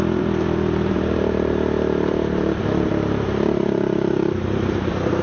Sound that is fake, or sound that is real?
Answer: fake